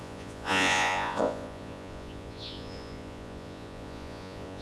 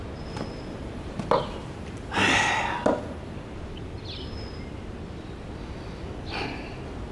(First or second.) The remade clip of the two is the first